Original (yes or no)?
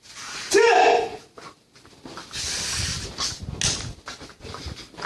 yes